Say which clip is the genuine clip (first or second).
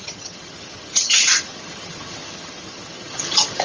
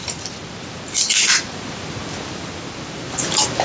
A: second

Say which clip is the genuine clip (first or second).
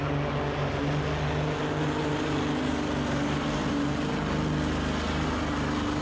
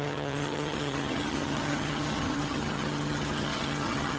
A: first